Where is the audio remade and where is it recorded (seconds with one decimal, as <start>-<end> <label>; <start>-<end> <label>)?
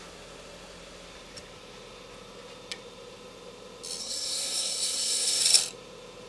0.0-4.0 recorded; 4.0-5.4 remade; 5.4-6.3 recorded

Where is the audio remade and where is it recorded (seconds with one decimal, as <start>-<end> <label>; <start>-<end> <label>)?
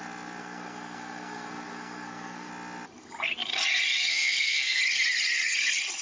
0.0-0.4 recorded; 0.4-2.5 remade; 2.5-4.1 recorded; 4.1-4.8 remade; 4.8-6.0 recorded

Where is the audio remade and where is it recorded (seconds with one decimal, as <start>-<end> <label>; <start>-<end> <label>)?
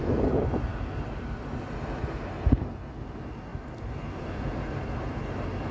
0.0-5.7 recorded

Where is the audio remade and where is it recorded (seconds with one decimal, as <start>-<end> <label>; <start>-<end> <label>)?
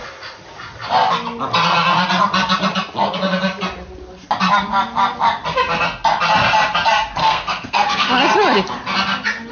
0.0-7.2 recorded; 7.2-8.1 remade; 8.1-9.5 recorded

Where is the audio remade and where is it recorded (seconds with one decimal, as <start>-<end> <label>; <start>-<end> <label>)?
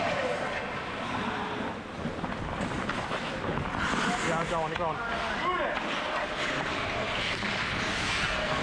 0.0-7.9 recorded; 7.9-8.6 remade